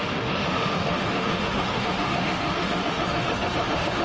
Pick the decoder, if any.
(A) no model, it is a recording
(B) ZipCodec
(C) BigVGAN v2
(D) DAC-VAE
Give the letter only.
D